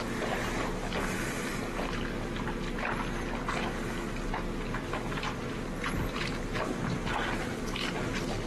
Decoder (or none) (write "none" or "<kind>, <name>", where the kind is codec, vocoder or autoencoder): none